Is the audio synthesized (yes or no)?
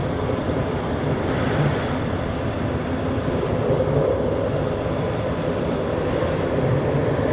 yes